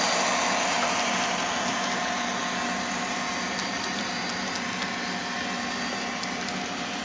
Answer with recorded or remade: recorded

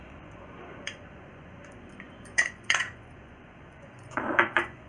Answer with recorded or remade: remade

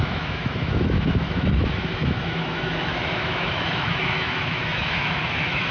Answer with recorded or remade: remade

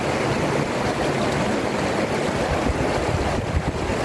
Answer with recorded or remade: recorded